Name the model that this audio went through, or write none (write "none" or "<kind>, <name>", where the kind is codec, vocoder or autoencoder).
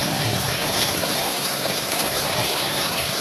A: codec, SNAC